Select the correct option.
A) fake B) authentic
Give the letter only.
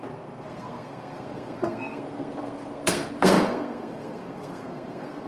A